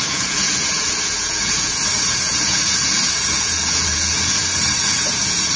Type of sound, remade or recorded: remade